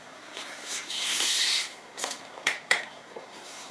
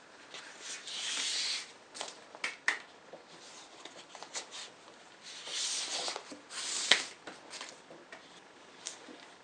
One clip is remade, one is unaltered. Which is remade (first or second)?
first